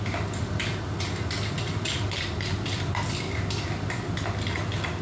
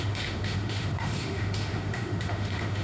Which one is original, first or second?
first